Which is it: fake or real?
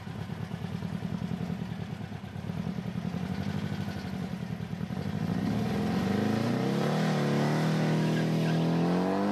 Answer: real